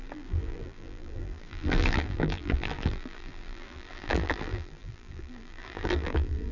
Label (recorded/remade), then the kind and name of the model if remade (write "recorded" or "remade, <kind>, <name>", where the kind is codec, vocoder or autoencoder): remade, vocoder, BigVGAN v2